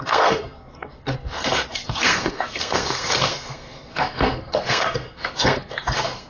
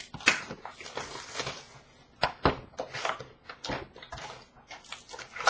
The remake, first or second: first